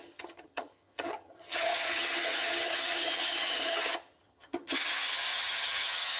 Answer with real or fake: fake